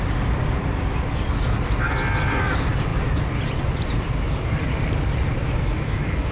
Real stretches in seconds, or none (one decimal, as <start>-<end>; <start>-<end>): 0.0-5.4